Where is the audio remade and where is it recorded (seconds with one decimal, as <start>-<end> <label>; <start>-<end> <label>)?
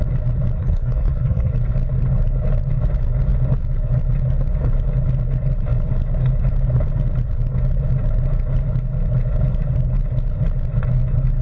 0.0-0.6 recorded; 0.6-1.5 remade; 1.5-11.4 recorded